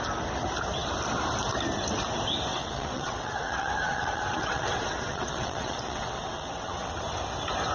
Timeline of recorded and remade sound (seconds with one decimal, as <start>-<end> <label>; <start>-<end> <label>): 0.0-2.5 recorded; 2.5-6.9 remade; 6.9-7.7 recorded